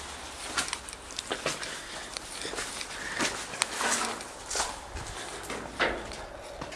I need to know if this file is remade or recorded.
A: recorded